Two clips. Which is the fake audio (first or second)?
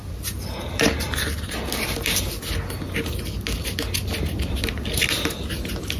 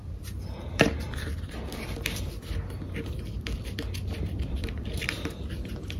second